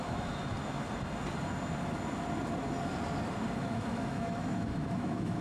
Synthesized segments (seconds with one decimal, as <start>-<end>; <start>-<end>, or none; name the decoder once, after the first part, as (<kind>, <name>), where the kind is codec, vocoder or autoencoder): 0.0-0.4 (autoencoder, DAC-VAE); 3.6-5.4